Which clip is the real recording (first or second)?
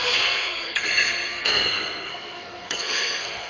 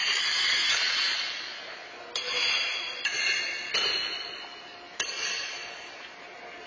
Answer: second